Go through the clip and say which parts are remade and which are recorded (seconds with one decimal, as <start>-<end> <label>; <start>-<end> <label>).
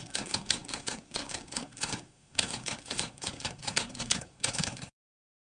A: 0.0-5.5 remade